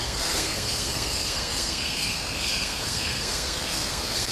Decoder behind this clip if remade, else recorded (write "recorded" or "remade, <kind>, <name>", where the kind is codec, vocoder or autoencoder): remade, codec, SNAC